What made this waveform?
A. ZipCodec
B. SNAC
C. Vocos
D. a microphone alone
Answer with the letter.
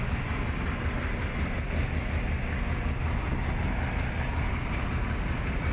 D